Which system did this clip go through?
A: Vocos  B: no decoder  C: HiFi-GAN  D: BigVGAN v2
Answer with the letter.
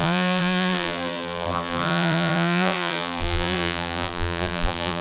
D